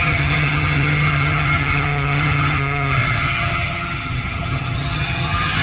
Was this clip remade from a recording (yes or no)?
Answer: yes